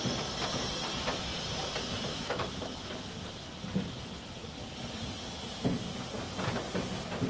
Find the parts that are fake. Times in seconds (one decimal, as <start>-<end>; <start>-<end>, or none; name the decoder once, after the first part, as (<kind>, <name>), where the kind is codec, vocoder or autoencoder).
2.1-2.9 (autoencoder, DAC-VAE)